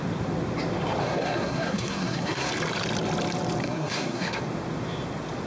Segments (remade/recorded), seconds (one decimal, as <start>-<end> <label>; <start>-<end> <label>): 0.0-1.0 recorded; 1.0-2.5 remade; 2.5-3.6 recorded; 3.6-4.4 remade; 4.4-5.5 recorded